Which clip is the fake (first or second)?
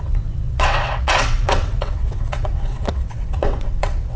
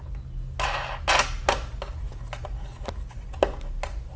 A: first